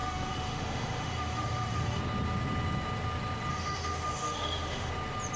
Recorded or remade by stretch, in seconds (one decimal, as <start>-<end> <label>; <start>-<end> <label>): 0.0-2.0 remade; 2.0-3.5 recorded; 3.5-4.9 remade; 4.9-5.4 recorded